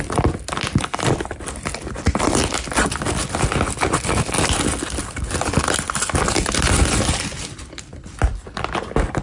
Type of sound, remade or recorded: recorded